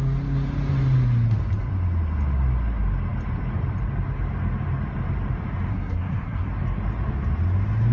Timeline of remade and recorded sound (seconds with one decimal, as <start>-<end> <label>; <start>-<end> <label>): 0.0-5.7 recorded; 5.7-6.5 remade; 6.5-7.9 recorded